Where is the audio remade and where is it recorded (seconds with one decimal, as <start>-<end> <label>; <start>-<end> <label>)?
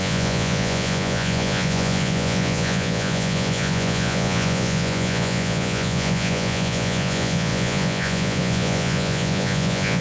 0.0-10.0 remade